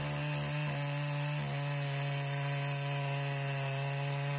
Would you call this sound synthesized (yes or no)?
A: no